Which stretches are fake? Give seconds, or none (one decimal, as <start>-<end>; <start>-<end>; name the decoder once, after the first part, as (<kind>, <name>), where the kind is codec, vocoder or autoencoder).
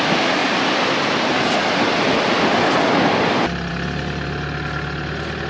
none